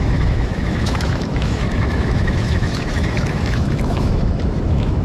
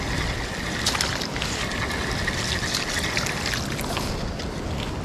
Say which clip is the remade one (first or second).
first